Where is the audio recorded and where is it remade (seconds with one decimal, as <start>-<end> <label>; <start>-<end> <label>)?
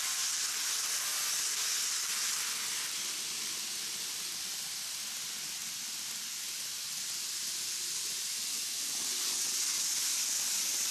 0.0-10.9 recorded